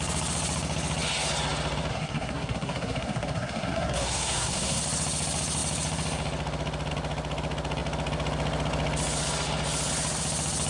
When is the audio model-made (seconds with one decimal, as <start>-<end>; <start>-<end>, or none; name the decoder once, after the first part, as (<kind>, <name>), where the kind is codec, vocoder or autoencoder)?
1.9-4.8 (codec, SNAC)